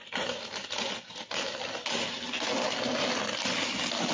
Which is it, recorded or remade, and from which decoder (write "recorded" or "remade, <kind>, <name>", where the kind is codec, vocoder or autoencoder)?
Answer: recorded